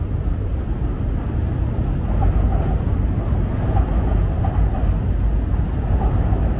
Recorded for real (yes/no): yes